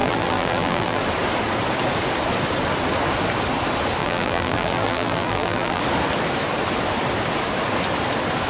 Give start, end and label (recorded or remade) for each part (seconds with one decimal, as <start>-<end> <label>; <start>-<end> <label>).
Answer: 0.0-1.0 remade; 1.0-4.0 recorded; 4.0-5.8 remade; 5.8-8.5 recorded